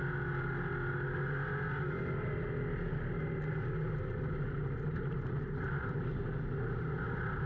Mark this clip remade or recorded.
recorded